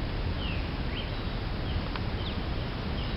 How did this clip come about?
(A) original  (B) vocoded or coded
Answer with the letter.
A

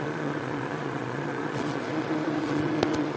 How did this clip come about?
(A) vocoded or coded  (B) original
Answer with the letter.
A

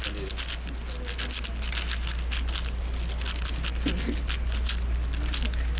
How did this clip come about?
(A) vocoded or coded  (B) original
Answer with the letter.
B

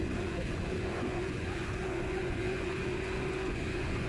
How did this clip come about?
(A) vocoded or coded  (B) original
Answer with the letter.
A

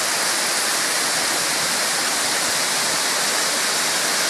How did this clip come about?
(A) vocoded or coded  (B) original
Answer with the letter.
B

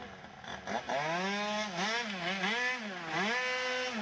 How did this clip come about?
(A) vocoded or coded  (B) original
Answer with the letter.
B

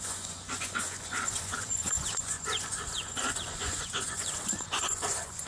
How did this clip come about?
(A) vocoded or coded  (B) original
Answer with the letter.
A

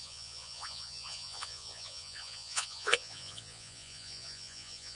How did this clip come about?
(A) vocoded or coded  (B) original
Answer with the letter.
A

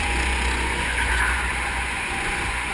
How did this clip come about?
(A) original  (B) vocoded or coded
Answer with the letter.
B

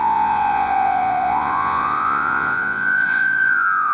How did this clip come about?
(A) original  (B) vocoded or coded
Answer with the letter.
B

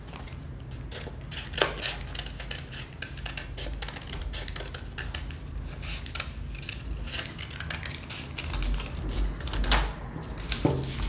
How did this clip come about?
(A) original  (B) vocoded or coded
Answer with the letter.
A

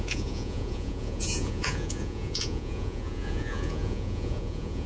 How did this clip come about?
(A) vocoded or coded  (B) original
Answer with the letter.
A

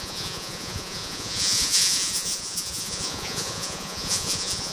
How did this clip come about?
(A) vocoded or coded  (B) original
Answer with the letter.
A